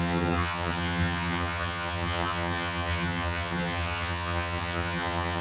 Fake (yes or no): yes